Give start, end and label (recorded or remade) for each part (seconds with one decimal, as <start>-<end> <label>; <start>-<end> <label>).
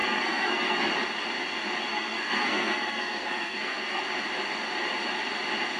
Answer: 0.0-0.9 remade; 0.9-1.9 recorded; 1.9-4.0 remade; 4.0-5.8 recorded